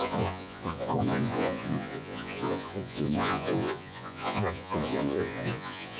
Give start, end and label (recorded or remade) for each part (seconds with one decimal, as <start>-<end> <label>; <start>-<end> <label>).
0.0-6.0 remade